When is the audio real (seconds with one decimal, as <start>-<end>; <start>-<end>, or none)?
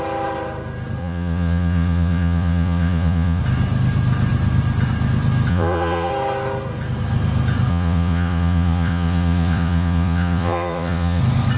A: 0.0-1.0; 3.4-5.5; 6.1-7.7; 11.2-11.6